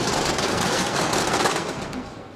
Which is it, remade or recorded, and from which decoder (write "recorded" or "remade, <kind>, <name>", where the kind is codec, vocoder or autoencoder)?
remade, codec, SNAC